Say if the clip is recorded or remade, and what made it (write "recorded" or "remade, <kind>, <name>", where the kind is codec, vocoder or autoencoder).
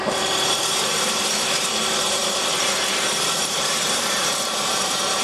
remade, vocoder, BigVGAN v2